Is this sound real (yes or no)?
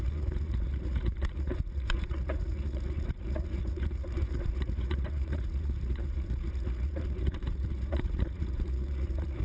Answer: no